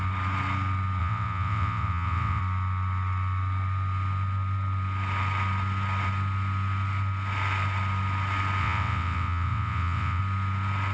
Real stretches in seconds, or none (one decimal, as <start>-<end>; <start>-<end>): 0.0-1.0; 2.4-8.6; 10.2-10.9